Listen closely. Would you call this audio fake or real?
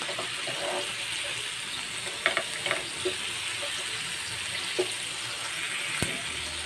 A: real